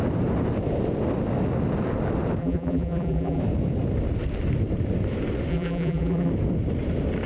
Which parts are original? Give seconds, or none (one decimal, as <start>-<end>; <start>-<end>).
0.0-2.4; 3.4-5.5; 6.3-7.3